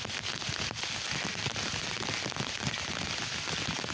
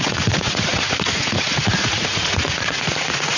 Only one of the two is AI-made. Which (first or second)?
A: second